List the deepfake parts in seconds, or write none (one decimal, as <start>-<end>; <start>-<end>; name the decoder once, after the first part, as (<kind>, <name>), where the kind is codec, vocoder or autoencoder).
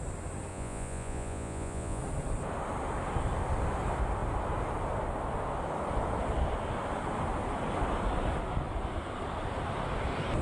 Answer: 0.5-2.0 (vocoder, Vocos)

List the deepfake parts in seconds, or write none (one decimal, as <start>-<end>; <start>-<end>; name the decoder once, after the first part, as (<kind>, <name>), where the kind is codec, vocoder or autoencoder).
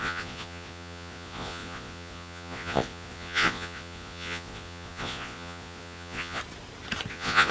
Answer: 0.0-6.4 (vocoder, Vocos); 7.1-7.5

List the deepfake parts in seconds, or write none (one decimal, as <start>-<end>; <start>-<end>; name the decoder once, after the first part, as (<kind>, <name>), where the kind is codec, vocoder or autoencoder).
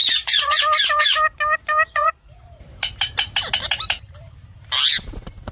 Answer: 0.0-0.6 (vocoder, Vocos); 1.9-2.5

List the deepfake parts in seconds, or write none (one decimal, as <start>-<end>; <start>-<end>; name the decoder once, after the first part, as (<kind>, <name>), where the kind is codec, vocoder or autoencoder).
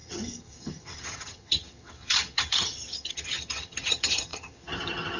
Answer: 0.0-5.2 (vocoder, HiFi-GAN)